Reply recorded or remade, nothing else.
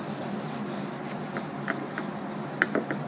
recorded